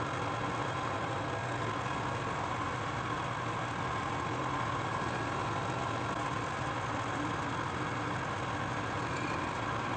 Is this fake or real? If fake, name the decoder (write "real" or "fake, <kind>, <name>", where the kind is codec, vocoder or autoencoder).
real